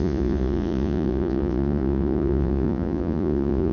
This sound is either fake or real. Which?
fake